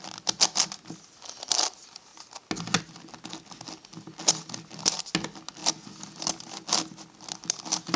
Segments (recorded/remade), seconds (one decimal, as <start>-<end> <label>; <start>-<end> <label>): 0.0-8.0 recorded